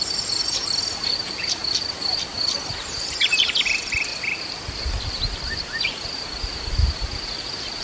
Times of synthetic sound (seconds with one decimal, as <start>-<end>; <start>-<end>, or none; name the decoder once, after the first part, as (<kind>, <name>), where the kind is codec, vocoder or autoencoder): 0.0-0.6 (vocoder, BigVGAN v2); 1.1-1.6; 2.7-4.1; 5.8-7.8